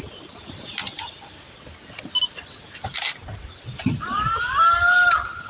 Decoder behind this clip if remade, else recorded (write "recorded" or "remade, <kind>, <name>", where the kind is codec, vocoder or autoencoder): recorded